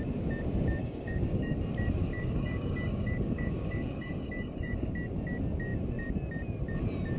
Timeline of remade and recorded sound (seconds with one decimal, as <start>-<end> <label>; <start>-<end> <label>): 0.0-0.8 recorded; 0.8-1.6 remade; 1.6-2.0 recorded; 2.0-4.9 remade; 4.9-7.2 recorded